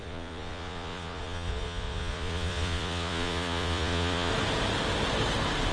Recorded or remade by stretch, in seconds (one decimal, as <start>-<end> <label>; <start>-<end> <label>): 0.0-4.3 remade; 4.3-5.7 recorded